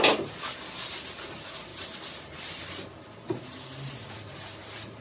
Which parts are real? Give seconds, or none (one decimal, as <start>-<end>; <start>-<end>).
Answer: 0.0-5.0